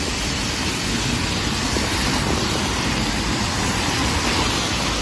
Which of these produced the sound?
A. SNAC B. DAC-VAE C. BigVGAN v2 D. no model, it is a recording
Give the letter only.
D